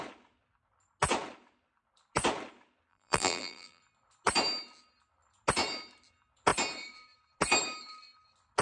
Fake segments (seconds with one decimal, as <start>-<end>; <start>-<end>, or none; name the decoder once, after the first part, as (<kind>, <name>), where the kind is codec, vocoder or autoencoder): 2.9-3.8 (vocoder, BigVGAN v2)